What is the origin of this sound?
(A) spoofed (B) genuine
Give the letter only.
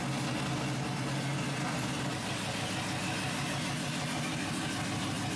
B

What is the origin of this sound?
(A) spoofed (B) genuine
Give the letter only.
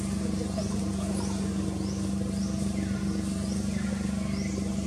B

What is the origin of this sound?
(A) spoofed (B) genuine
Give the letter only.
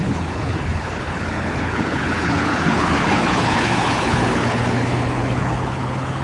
A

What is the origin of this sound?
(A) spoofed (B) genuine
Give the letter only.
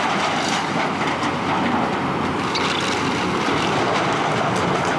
B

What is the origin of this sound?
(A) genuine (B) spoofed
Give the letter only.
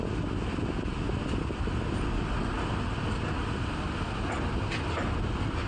A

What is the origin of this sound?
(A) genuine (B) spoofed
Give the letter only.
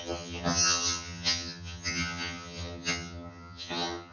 B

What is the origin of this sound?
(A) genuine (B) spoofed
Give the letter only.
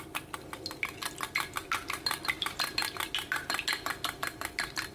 A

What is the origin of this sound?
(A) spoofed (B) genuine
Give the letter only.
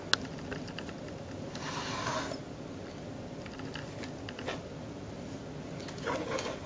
B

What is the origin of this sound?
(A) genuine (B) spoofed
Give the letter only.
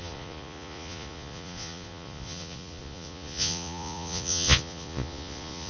B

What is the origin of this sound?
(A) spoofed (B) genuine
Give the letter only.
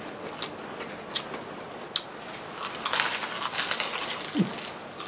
B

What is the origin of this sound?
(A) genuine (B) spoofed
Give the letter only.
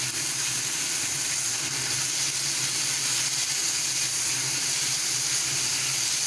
A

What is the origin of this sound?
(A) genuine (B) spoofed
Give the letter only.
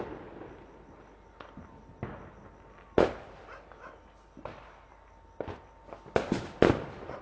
A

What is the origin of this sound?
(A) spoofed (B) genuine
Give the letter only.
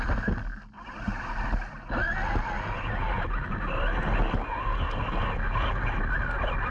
B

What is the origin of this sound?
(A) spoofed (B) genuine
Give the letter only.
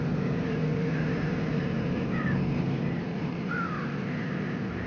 A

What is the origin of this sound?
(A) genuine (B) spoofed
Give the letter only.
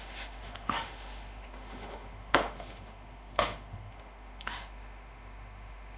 B